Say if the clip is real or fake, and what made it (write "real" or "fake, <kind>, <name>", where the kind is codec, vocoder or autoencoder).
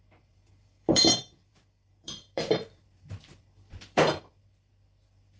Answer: fake, vocoder, BigVGAN v2